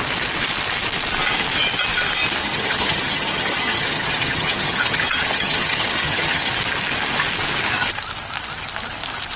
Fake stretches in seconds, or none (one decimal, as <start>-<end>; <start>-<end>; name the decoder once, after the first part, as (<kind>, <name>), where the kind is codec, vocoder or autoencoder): 2.4-6.5 (vocoder, HiFi-GAN)

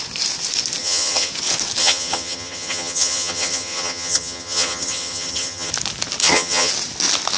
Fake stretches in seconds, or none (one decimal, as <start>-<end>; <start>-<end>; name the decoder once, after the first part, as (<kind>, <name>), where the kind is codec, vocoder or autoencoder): 0.8-1.3 (vocoder, HiFi-GAN); 1.8-5.7; 6.2-6.7

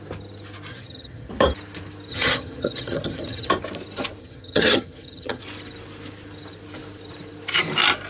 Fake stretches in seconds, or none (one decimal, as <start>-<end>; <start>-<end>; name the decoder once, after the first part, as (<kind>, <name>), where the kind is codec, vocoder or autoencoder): 0.7-1.3 (vocoder, HiFi-GAN); 2.1-3.5; 4.2-5.4

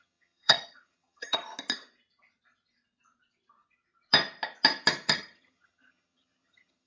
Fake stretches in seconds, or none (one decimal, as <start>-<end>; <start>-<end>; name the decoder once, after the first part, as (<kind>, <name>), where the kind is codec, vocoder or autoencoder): 0.0-1.5 (vocoder, HiFi-GAN); 5.1-6.9

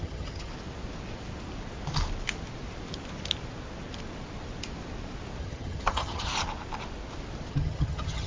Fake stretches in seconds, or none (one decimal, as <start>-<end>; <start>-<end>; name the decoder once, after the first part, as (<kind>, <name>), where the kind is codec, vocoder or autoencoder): 0.0-0.5 (vocoder, HiFi-GAN); 5.4-6.3; 7.5-8.3

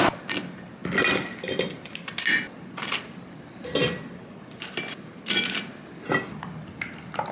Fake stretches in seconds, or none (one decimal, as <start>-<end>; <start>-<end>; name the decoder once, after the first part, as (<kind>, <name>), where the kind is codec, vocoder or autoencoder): none